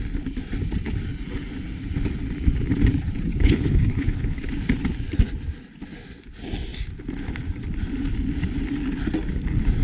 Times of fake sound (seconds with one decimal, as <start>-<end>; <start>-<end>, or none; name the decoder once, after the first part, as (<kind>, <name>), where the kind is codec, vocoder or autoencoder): 3.3-4.5 (codec, HILCodec)